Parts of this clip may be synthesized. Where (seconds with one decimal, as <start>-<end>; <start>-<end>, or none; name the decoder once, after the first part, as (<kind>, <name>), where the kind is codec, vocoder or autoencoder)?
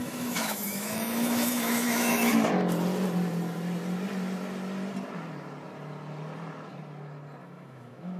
0.0-2.3 (autoencoder, DAC-VAE); 7.4-8.2